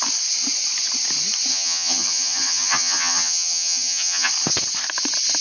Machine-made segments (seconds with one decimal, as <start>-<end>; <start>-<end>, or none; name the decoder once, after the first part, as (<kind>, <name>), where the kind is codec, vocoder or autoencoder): 1.5-4.3 (vocoder, HiFi-GAN)